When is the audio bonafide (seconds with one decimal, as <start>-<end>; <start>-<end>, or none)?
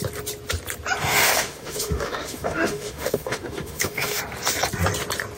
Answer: 0.0-1.0; 4.2-5.4